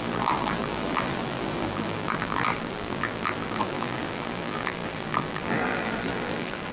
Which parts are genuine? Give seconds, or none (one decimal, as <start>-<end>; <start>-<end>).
none